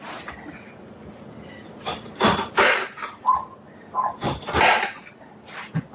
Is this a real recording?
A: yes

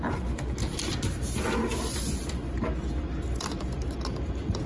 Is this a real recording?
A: yes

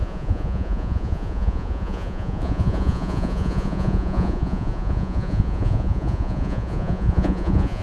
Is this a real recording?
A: no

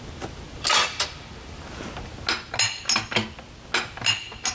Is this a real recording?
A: yes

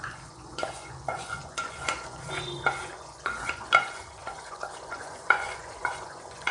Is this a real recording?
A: no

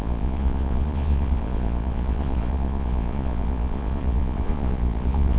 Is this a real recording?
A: no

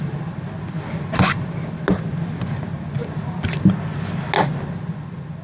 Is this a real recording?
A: yes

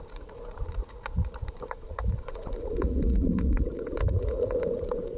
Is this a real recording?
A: no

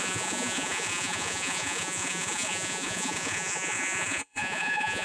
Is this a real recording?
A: no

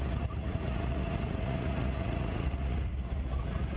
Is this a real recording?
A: no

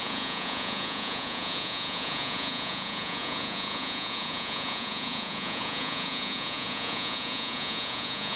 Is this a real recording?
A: no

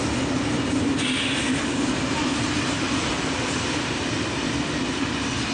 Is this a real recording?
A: yes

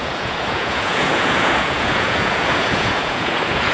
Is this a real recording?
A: no